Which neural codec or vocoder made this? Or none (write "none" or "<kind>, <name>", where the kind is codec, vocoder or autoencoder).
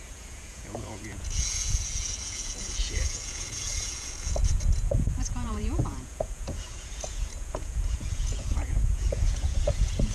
vocoder, Vocos